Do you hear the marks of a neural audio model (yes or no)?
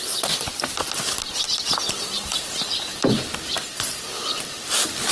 no